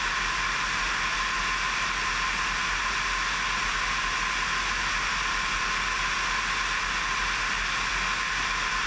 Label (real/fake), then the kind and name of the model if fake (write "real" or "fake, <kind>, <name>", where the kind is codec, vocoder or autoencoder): real